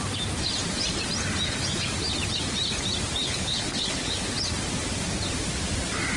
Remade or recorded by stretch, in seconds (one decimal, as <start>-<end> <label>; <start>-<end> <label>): 0.0-3.2 recorded; 3.2-4.3 remade; 4.3-6.2 recorded